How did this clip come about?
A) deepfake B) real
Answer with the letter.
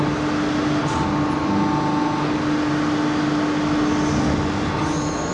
B